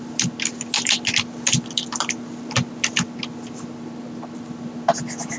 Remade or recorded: recorded